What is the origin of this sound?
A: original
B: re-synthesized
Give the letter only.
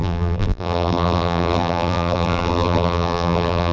B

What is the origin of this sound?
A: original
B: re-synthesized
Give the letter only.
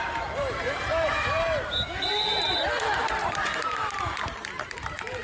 B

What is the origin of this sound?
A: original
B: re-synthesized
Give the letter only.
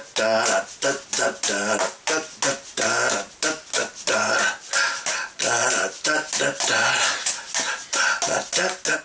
A